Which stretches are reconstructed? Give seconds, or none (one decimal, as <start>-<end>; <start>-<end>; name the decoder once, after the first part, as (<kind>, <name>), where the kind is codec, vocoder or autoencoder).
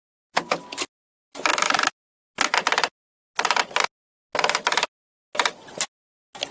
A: none